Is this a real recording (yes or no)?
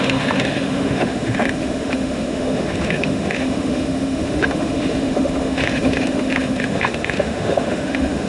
no